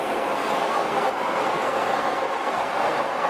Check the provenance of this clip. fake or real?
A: fake